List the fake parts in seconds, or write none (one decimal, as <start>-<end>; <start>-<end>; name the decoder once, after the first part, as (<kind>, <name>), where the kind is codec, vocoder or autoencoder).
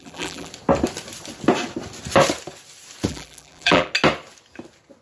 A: 0.0-0.5 (vocoder, BigVGAN v2); 3.1-3.9